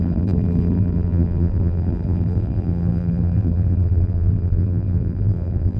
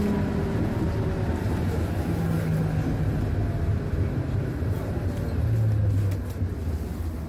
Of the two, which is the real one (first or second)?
second